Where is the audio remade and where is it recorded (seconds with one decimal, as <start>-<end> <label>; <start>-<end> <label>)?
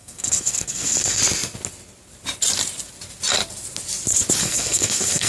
0.0-1.2 remade; 1.2-4.4 recorded; 4.4-5.3 remade